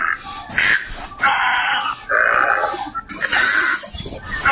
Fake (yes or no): no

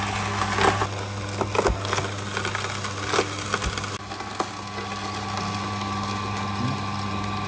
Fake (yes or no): no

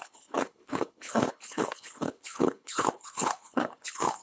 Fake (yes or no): yes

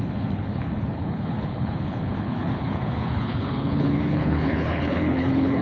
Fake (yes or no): yes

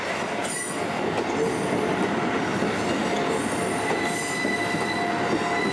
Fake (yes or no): no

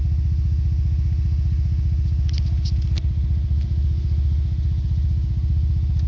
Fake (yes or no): no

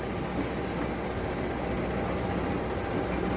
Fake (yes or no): no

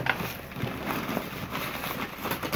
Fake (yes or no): no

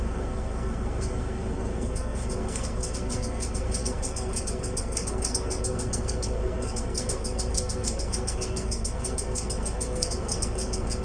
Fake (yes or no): yes